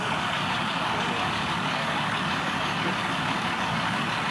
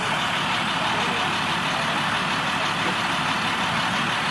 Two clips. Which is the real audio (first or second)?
second